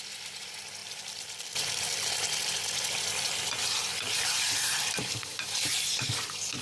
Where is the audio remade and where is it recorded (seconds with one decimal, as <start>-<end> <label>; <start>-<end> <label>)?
0.0-0.8 recorded; 0.8-2.1 remade; 2.1-3.9 recorded; 3.9-6.1 remade; 6.1-6.6 recorded